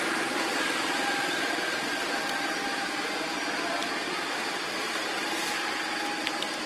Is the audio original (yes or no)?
no